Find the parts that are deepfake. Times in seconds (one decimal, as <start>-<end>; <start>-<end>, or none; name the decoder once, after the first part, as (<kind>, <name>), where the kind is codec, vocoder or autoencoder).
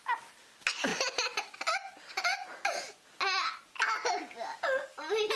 none